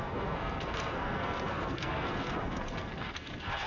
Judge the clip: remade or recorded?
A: remade